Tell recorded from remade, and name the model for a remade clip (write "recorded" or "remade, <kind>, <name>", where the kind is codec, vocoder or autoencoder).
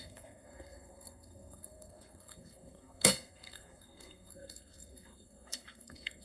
remade, codec, SNAC